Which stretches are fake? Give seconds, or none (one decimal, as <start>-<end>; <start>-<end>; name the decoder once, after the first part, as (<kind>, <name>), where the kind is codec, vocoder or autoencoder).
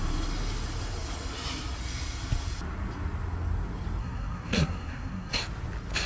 4.0-5.4 (codec, SNAC)